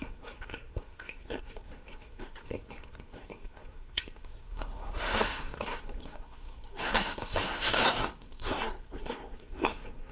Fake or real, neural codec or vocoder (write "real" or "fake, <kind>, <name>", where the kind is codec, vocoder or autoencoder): fake, codec, SNAC